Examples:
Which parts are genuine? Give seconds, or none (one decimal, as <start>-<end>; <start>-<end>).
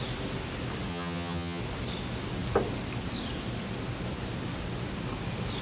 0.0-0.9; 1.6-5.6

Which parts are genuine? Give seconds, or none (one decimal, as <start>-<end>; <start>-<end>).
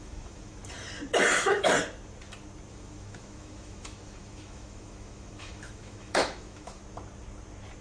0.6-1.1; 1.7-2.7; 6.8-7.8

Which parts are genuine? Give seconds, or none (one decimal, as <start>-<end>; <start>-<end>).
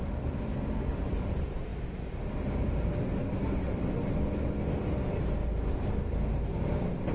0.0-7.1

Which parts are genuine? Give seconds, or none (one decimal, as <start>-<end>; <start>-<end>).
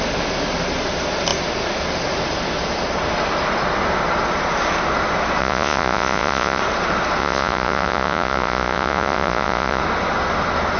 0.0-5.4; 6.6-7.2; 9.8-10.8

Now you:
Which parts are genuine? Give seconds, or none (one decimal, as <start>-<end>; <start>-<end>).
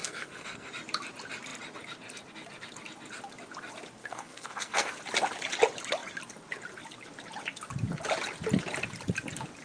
0.7-4.0; 5.0-9.6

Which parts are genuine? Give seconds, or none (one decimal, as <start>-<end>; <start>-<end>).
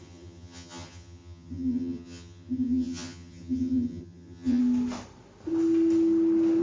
4.6-6.6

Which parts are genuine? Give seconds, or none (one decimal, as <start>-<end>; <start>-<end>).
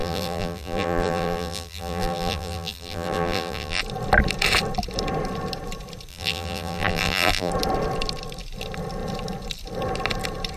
3.8-6.1; 7.5-10.6